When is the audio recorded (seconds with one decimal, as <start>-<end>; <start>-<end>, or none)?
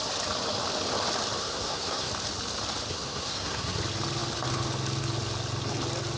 0.0-1.4; 2.1-2.9; 3.8-6.2